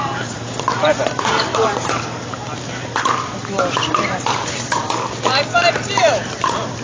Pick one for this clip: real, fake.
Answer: fake